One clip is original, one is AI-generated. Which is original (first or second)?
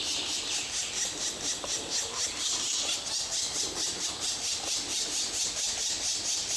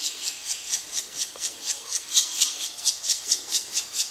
first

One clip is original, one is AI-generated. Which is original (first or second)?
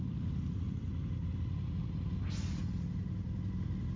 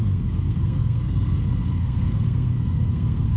first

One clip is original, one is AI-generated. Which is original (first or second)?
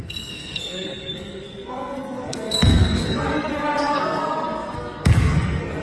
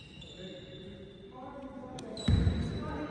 second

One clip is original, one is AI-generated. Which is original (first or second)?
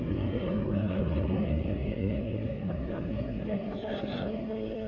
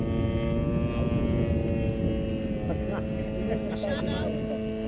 second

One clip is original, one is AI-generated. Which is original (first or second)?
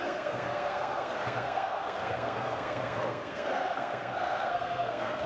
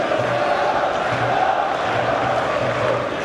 second